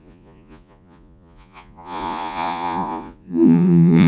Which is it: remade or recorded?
remade